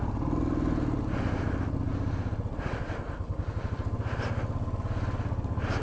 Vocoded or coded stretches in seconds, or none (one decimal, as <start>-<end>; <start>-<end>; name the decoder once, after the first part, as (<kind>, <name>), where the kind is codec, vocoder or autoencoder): none